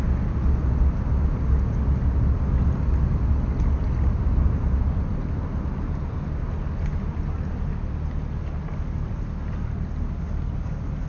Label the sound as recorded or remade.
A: recorded